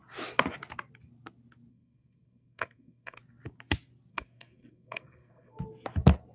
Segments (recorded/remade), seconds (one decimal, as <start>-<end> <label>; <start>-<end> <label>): 0.0-1.7 recorded; 1.7-3.2 remade; 3.2-4.1 recorded; 4.1-5.6 remade; 5.6-6.3 recorded